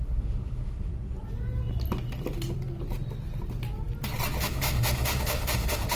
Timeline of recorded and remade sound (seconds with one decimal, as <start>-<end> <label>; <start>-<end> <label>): 0.0-0.9 remade; 0.9-4.4 recorded; 4.4-6.0 remade